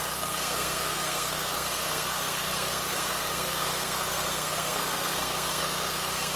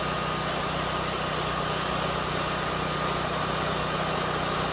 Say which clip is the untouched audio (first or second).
second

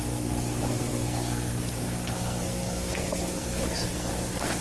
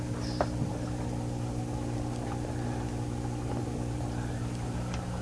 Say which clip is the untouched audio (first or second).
second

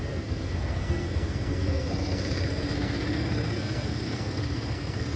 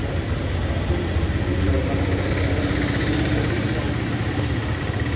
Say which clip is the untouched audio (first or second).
second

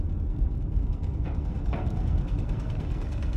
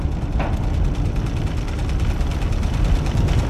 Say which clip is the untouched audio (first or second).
second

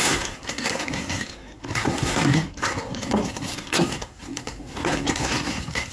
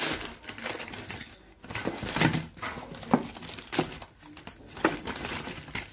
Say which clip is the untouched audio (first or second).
second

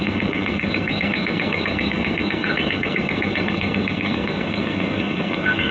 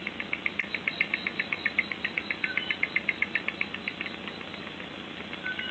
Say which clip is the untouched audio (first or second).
second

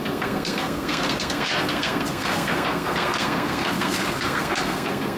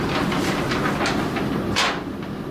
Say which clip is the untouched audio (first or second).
second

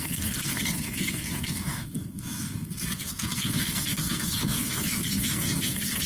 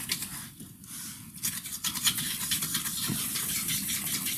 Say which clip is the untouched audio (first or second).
second